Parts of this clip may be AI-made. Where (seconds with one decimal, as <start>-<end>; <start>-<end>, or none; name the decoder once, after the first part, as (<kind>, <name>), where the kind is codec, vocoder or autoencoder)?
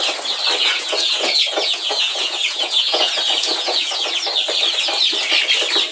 0.6-4.1 (vocoder, Vocos)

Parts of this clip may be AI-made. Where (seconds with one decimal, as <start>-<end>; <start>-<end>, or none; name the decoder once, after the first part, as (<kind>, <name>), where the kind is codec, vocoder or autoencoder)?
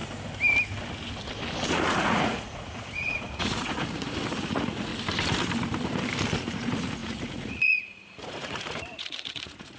1.7-4.9 (vocoder, Vocos); 6.4-9.8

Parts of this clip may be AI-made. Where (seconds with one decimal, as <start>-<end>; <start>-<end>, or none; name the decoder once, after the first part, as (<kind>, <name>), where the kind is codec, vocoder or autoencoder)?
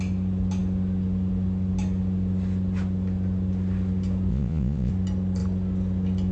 4.3-4.9 (vocoder, Vocos)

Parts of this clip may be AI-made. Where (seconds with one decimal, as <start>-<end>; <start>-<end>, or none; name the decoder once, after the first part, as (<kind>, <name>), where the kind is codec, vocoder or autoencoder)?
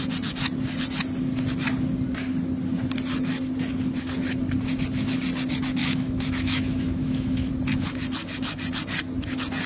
5.8-7.5 (autoencoder, DAC-VAE)